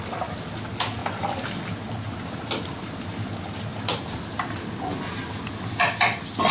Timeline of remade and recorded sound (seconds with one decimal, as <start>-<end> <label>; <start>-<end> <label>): 0.0-6.5 recorded